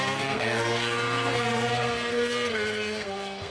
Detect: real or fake fake